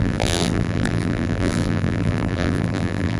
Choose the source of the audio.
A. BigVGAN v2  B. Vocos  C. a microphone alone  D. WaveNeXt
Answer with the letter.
A